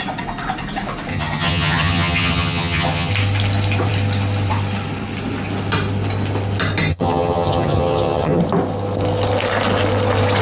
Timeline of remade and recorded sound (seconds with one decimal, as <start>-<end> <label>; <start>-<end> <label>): 0.0-1.1 recorded; 1.1-3.1 remade; 3.1-6.9 recorded; 6.9-8.4 remade; 8.4-10.4 recorded